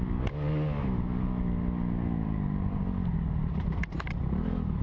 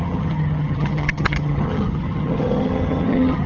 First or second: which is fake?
second